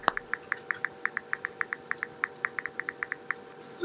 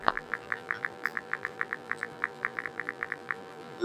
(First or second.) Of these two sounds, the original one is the first